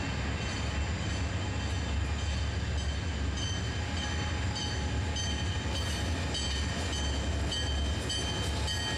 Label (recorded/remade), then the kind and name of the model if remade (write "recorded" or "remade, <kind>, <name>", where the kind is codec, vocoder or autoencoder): recorded